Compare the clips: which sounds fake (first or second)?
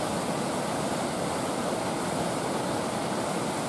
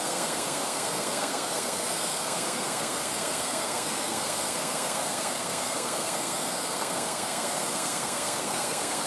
second